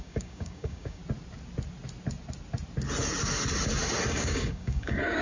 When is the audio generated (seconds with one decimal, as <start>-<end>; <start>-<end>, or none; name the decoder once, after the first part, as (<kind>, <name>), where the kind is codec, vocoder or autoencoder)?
0.0-1.0 (codec, DAC); 4.1-5.2